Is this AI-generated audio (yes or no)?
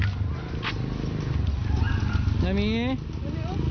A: no